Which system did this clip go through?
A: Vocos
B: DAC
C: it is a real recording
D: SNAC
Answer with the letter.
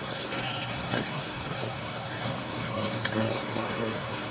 D